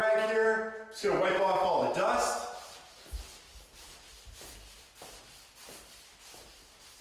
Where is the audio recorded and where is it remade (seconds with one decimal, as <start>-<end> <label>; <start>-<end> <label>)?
0.0-7.0 recorded